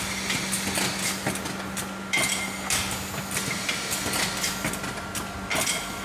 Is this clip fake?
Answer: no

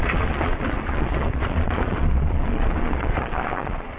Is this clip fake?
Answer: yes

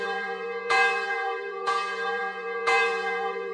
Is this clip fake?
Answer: yes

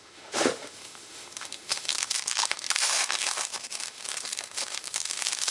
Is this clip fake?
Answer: yes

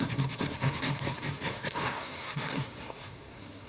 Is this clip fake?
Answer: yes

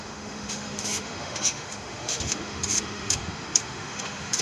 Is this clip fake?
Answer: yes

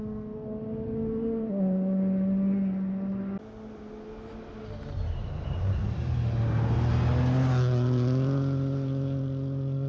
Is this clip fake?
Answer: no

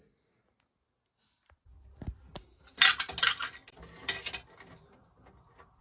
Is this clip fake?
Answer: no